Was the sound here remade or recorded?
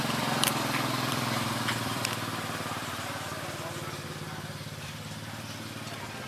remade